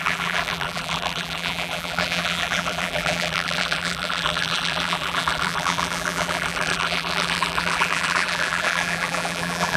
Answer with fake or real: fake